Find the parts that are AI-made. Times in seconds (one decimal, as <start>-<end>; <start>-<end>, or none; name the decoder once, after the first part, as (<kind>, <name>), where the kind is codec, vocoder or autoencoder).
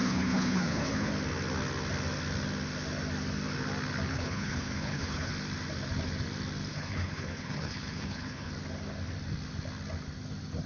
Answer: 0.0-1.1 (codec, HILCodec); 4.1-5.3; 6.7-8.5